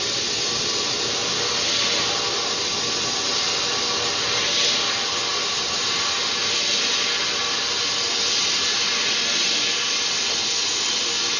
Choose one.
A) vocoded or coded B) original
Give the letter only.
B